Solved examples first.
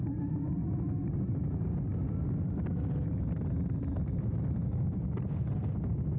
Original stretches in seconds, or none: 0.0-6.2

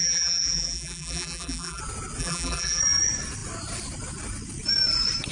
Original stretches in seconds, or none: 1.8-2.2; 2.8-5.3

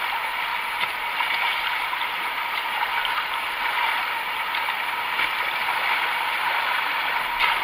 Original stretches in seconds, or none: 0.0-0.5; 2.3-2.9; 3.6-7.6

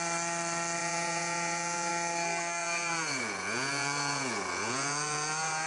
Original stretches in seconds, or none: 0.0-0.8; 1.9-2.6

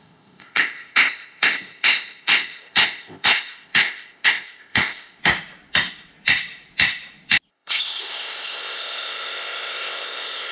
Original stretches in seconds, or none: 5.2-7.5

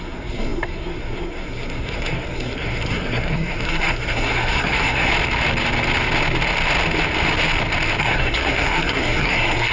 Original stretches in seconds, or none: 5.1-8.0